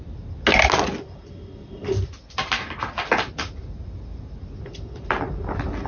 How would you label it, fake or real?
real